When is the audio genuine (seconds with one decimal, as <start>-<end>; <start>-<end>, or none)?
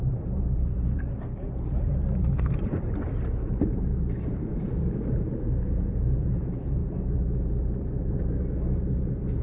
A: 6.8-8.5